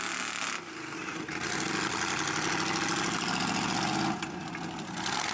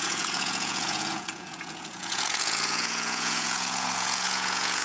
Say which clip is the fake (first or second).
second